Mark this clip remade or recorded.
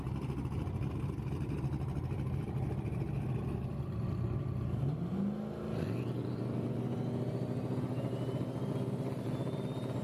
recorded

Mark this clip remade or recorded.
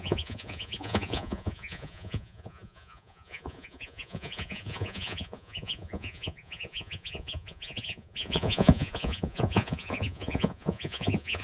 remade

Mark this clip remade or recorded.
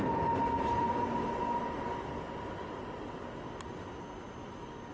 recorded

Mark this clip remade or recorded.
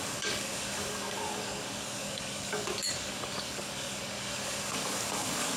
remade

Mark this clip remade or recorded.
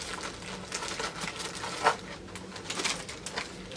recorded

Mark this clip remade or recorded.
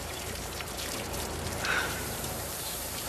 remade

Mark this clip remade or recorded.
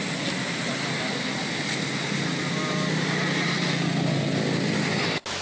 recorded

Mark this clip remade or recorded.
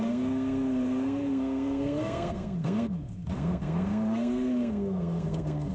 remade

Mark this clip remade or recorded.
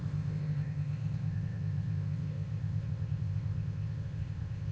remade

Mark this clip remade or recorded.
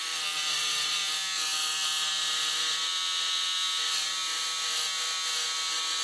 remade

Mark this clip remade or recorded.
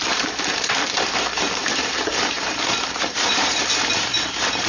remade